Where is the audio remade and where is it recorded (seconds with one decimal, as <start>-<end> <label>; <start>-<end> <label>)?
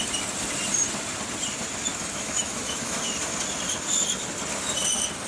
0.0-1.9 recorded; 1.9-3.0 remade; 3.0-5.3 recorded